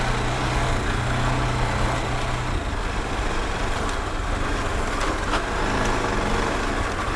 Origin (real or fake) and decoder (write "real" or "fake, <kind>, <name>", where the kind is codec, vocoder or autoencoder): real